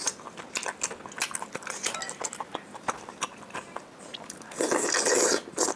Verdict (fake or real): real